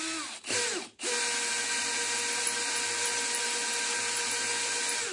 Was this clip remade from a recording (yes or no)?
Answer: no